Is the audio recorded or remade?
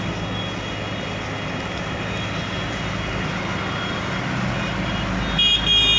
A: recorded